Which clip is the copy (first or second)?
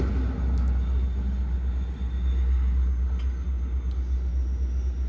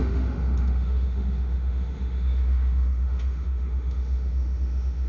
second